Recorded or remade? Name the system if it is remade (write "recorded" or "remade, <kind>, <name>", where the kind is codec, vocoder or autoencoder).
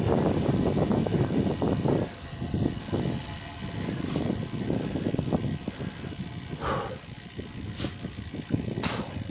recorded